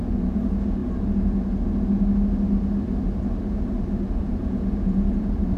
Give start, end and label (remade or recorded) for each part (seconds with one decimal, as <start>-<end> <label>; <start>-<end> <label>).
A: 0.0-0.8 remade; 0.8-4.2 recorded; 4.2-5.6 remade